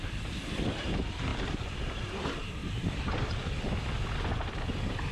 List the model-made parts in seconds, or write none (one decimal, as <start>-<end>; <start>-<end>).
1.3-2.1; 2.6-3.6

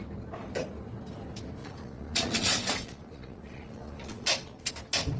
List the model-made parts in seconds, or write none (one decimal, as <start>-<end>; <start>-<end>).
1.6-4.7

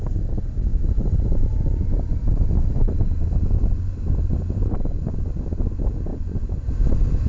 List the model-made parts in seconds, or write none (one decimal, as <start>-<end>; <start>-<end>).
0.7-5.1; 6.1-7.3

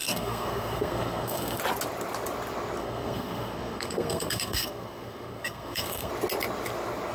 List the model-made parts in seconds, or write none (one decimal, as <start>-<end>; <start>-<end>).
0.0-1.6; 2.8-6.1

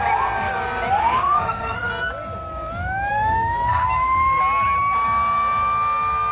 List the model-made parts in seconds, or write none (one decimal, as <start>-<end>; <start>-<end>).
1.0-1.9; 3.1-4.4

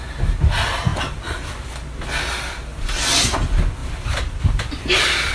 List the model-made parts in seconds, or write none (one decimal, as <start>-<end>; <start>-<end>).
0.9-1.5; 3.8-5.3